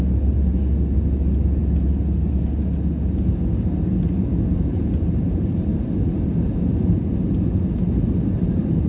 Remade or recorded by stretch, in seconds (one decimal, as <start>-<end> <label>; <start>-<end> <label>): 0.0-5.7 recorded; 5.7-8.9 remade